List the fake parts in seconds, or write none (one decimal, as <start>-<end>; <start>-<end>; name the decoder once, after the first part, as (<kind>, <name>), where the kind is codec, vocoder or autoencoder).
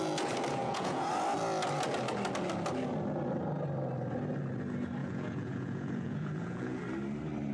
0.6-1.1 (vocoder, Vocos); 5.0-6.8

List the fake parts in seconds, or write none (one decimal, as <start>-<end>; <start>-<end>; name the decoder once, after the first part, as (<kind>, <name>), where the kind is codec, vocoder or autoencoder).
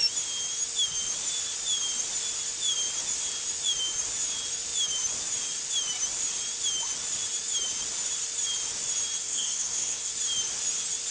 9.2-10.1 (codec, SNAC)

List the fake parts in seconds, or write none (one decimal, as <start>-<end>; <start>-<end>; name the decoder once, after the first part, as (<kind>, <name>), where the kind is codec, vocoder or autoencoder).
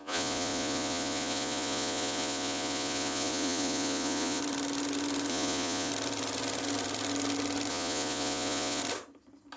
0.0-4.4 (vocoder, Vocos); 5.3-5.9; 7.7-8.8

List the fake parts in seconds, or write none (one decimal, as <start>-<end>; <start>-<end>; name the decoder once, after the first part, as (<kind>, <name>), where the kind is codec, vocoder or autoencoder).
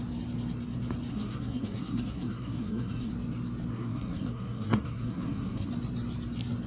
1.1-3.1 (codec, SNAC); 3.7-5.7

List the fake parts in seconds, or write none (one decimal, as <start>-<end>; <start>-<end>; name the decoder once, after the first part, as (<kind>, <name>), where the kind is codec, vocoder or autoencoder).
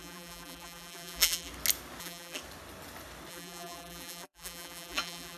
0.0-1.5 (vocoder, BigVGAN v2); 2.0-2.4; 3.3-5.4